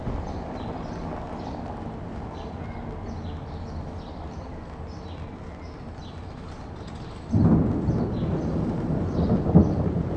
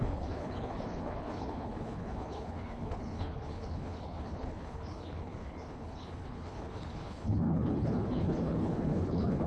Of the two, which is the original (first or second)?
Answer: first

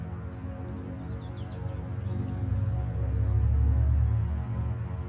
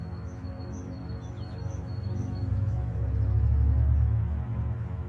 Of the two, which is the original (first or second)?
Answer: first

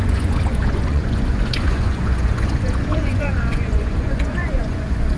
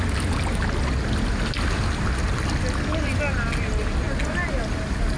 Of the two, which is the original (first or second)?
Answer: second